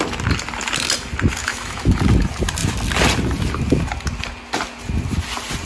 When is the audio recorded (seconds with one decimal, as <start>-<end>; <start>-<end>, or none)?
0.0-1.4; 1.9-5.7